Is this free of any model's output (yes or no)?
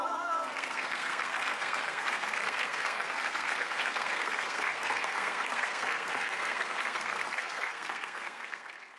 no